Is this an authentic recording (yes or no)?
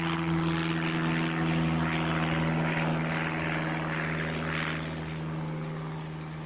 yes